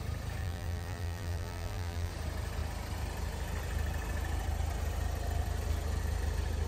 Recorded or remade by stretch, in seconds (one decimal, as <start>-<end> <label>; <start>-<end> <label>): 0.0-0.4 recorded; 0.4-2.1 remade; 2.1-6.7 recorded